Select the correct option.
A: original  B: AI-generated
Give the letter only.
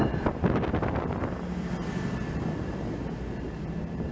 A